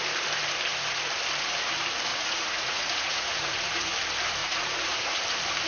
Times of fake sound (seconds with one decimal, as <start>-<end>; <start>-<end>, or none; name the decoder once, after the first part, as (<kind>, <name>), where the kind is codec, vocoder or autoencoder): 2.1-3.9 (vocoder, Vocos); 4.4-5.2

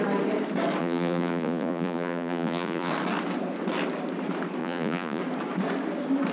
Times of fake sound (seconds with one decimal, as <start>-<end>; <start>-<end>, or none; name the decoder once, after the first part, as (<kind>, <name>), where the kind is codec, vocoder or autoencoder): 0.8-2.9 (vocoder, Vocos); 4.6-5.2